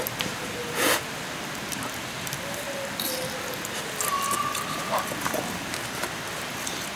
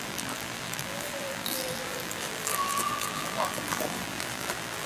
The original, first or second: first